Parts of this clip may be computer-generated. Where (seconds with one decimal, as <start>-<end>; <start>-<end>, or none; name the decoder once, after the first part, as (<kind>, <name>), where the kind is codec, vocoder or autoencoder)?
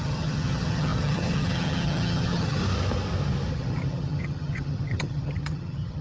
0.0-2.6 (vocoder, HiFi-GAN); 3.5-6.0